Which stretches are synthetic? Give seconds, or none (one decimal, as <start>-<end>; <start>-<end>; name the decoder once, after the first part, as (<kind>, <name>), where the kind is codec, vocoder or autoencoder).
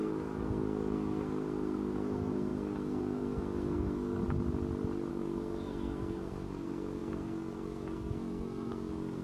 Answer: 0.0-4.2 (codec, SNAC); 5.1-9.2